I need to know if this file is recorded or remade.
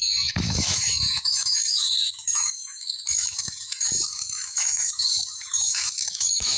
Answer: remade